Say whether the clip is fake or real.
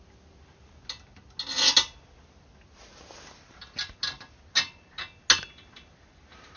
real